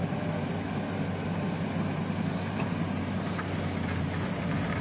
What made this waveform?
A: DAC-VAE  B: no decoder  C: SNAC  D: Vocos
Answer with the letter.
B